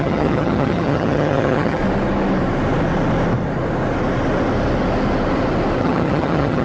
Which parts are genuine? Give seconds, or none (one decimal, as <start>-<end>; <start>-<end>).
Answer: 1.8-5.8